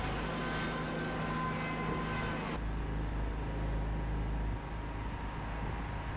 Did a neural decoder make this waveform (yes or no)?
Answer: no